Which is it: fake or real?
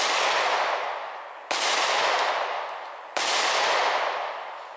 real